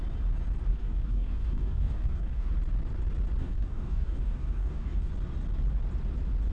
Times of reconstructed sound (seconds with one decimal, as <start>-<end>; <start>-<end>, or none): 0.7-2.5; 3.4-5.1